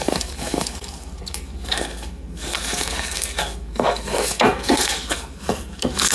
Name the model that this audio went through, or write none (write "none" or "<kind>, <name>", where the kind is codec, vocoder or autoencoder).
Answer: codec, SNAC